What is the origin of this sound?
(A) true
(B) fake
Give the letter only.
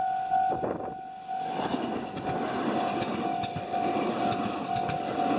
A